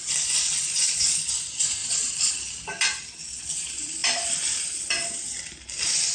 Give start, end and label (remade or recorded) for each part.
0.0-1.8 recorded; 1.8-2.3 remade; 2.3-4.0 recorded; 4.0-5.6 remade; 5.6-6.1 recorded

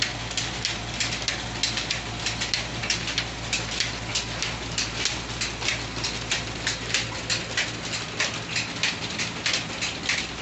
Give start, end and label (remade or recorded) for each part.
0.0-10.4 recorded

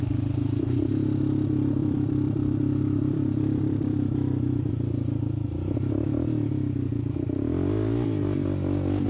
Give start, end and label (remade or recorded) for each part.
0.0-1.8 recorded; 1.8-4.7 remade; 4.7-9.1 recorded

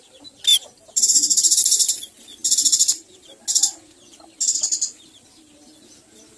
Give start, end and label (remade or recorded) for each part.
0.0-0.5 recorded; 0.5-1.9 remade; 1.9-6.4 recorded

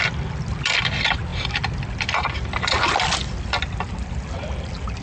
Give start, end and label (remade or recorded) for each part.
0.0-5.0 recorded

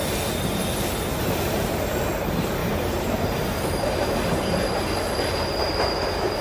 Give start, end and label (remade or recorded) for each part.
0.0-2.6 recorded; 2.6-6.4 remade